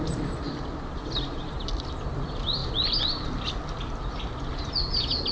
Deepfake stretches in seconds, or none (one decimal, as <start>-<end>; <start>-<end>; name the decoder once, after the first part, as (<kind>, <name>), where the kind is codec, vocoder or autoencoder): none